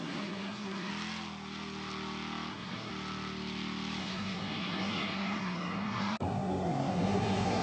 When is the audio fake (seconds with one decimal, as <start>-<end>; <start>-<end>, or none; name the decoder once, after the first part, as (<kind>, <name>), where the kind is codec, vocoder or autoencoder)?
0.0-0.9 (codec, SNAC); 2.5-2.9; 4.0-7.6